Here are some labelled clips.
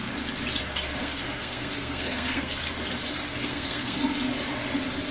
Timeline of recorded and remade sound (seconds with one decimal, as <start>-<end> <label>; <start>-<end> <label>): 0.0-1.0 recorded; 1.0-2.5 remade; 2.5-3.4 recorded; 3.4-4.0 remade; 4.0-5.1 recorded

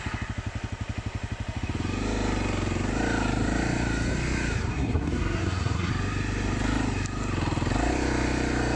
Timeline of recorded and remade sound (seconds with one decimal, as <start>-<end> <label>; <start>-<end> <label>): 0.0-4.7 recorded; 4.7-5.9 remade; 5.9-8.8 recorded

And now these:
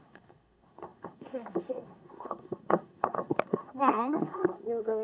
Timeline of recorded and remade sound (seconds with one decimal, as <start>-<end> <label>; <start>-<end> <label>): 0.0-5.0 remade

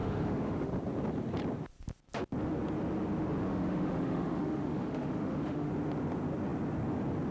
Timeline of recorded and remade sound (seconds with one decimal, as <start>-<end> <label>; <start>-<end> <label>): 0.0-0.7 remade; 0.7-3.5 recorded; 3.5-5.7 remade; 5.7-7.3 recorded

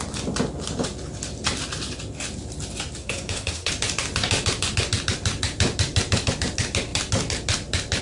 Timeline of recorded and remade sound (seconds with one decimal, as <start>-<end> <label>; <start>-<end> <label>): 0.0-3.0 recorded; 3.0-3.7 remade; 3.7-8.0 recorded

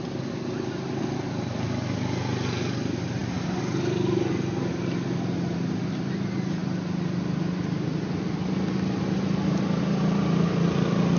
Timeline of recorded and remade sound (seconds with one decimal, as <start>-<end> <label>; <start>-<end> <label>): 0.0-11.2 recorded

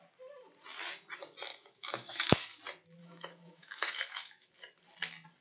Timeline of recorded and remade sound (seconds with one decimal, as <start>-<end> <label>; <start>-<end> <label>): 0.0-1.5 recorded; 1.5-2.6 remade; 2.6-3.0 recorded; 3.0-4.5 remade; 4.5-5.4 recorded